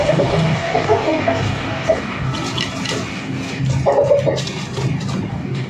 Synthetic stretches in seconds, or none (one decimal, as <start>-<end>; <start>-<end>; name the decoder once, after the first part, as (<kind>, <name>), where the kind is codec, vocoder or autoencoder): 0.0-2.3 (codec, DAC); 3.1-3.6; 5.3-5.7

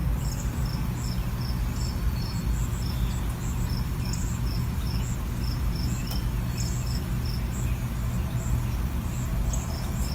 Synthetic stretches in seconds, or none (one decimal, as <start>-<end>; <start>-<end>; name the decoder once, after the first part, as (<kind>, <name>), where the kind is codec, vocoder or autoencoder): none

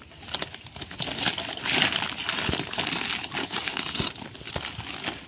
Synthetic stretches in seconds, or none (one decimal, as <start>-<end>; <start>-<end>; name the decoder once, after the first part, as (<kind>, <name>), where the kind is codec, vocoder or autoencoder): 3.4-4.1 (codec, DAC)

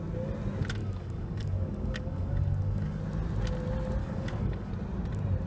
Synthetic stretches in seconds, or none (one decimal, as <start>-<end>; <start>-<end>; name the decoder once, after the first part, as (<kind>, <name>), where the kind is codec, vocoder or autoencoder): 0.8-3.0 (codec, DAC); 4.0-4.7

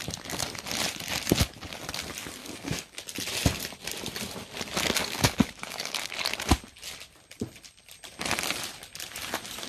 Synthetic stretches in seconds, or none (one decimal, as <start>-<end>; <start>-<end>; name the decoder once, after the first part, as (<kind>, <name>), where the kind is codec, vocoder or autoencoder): 2.4-3.0 (codec, DAC); 5.0-6.1

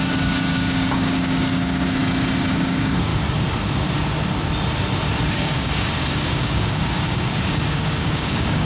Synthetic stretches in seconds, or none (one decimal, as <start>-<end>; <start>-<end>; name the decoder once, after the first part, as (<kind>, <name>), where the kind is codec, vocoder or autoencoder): 0.0-2.0 (codec, DAC); 2.5-3.1; 5.3-8.7